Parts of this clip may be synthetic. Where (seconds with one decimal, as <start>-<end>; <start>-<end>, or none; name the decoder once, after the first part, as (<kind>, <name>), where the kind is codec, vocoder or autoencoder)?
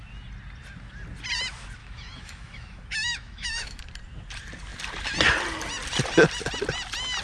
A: 1.8-3.8 (autoencoder, DAC-VAE)